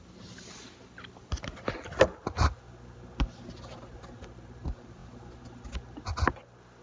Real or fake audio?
real